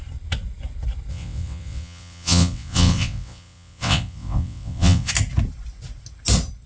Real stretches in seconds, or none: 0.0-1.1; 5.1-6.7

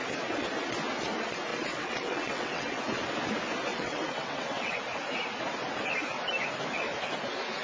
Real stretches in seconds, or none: 0.0-1.5; 2.8-3.7; 4.8-7.6

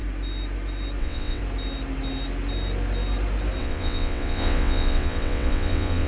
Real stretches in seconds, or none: 0.0-1.0; 1.4-3.6

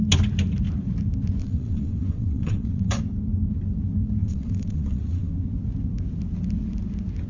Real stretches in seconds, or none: 0.0-1.4; 3.0-4.2; 5.3-7.3